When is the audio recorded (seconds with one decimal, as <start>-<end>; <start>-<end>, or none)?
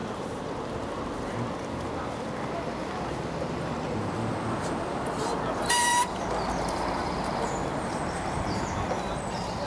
0.5-5.9; 8.7-9.7